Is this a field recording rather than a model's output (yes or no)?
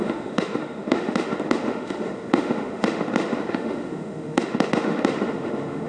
no